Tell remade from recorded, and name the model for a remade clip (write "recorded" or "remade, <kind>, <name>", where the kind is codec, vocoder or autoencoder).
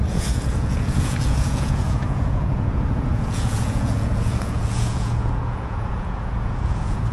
remade, vocoder, Vocos